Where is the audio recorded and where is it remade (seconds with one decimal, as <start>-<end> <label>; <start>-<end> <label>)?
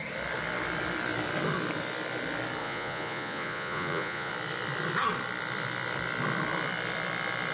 0.0-2.6 recorded; 2.6-4.3 remade; 4.3-7.5 recorded